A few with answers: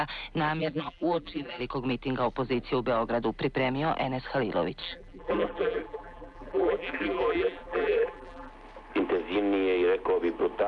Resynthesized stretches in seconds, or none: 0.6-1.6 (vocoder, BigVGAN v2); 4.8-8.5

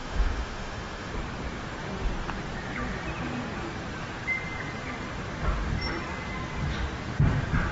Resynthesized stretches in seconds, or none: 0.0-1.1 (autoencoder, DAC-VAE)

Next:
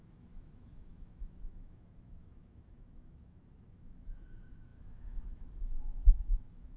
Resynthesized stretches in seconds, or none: 0.0-6.8 (autoencoder, DAC-VAE)

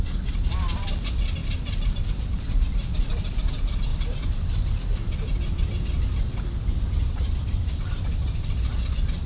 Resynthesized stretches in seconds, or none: 0.0-3.9 (vocoder, BigVGAN v2); 4.8-9.3

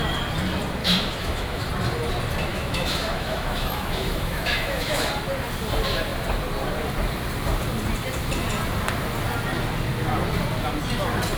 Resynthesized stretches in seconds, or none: 0.8-1.7 (autoencoder, DAC-VAE); 2.5-5.1

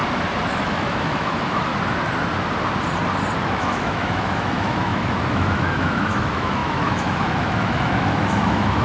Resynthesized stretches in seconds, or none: 0.5-1.7 (autoencoder, DAC-VAE); 3.4-8.8

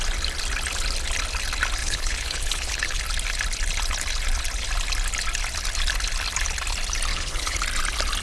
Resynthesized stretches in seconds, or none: 1.8-3.0 (codec, HILCodec); 7.1-7.6

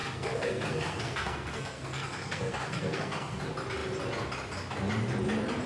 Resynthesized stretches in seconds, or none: 0.0-3.4 (codec, SNAC)